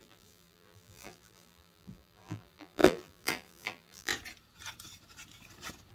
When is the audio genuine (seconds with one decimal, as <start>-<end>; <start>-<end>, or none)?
4.1-5.9